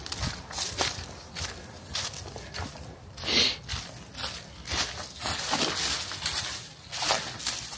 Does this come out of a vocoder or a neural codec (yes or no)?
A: no